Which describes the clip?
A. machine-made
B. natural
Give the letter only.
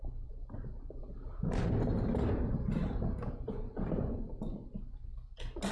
B